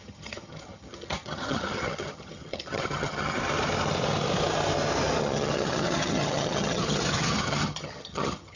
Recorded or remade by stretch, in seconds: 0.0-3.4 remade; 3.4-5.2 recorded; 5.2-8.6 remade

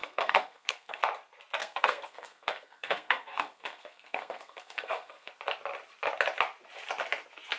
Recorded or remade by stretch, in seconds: 0.0-1.0 remade; 1.0-1.6 recorded; 1.6-5.3 remade; 5.3-7.6 recorded

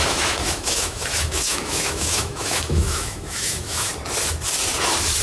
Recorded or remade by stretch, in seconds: 0.0-3.9 remade; 3.9-5.2 recorded

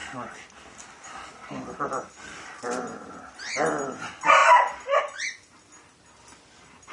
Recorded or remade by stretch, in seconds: 0.0-6.9 recorded

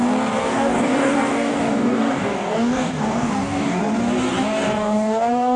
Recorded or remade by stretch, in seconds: 0.0-0.4 recorded; 0.4-3.8 remade; 3.8-4.3 recorded; 4.3-5.6 remade

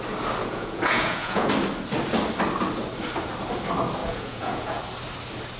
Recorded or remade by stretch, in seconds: 0.0-0.4 recorded; 0.4-1.5 remade; 1.5-4.0 recorded; 4.0-4.8 remade; 4.8-5.6 recorded

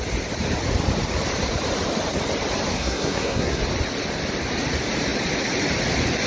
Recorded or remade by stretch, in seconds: 0.0-2.7 recorded; 2.7-3.6 remade; 3.6-6.3 recorded